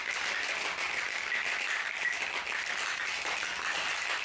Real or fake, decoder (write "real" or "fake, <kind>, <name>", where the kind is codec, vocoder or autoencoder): real